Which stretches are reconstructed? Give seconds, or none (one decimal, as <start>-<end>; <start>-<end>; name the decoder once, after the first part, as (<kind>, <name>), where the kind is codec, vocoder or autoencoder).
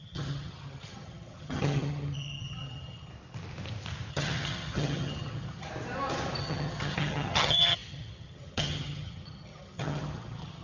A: 0.0-3.1 (vocoder, HiFi-GAN); 4.1-5.7; 6.4-10.6